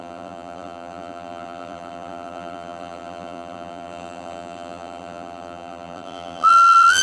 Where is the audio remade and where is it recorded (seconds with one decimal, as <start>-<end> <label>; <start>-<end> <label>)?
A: 0.0-7.0 remade